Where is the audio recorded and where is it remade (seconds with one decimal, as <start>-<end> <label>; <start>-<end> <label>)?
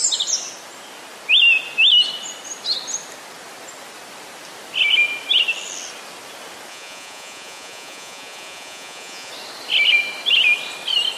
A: 0.0-6.7 recorded; 6.7-9.3 remade; 9.3-11.2 recorded